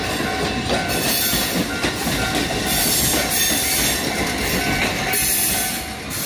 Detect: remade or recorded recorded